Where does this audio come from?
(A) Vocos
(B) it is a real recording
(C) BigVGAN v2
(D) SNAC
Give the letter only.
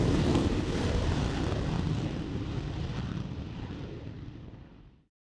C